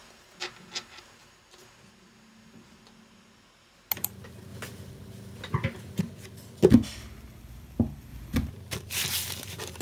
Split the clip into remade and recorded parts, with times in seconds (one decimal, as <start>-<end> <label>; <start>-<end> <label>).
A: 0.0-8.1 recorded; 8.1-9.8 remade